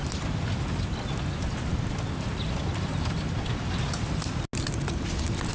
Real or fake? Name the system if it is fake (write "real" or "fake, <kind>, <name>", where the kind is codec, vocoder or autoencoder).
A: real